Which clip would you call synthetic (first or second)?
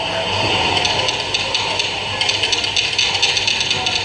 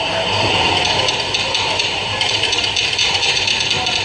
second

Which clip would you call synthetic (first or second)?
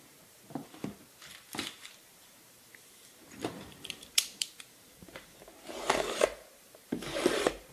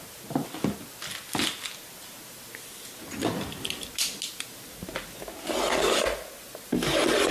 first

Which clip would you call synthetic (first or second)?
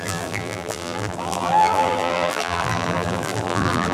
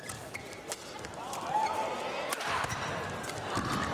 first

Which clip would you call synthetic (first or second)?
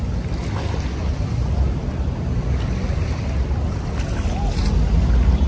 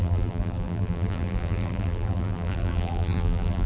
second